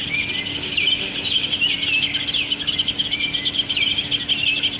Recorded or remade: recorded